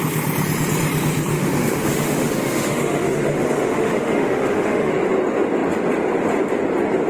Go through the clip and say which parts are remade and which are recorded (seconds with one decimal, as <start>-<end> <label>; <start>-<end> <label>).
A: 0.0-1.3 recorded; 1.3-4.9 remade; 4.9-7.1 recorded